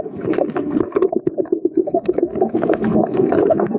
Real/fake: fake